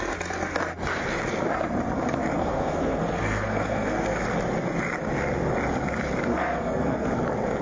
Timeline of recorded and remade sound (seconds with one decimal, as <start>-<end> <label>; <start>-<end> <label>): 0.0-2.4 recorded; 2.4-4.2 remade; 4.2-6.3 recorded; 6.3-7.1 remade; 7.1-7.6 recorded